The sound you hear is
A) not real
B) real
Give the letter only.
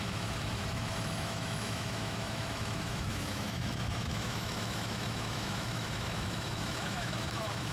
A